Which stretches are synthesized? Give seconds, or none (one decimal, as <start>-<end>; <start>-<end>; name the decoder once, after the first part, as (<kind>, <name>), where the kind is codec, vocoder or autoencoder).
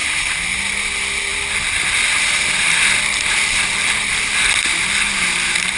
none